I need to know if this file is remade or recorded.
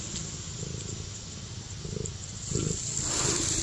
recorded